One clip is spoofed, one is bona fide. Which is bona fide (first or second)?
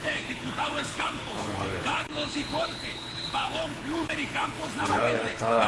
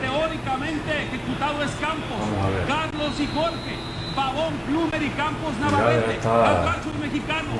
second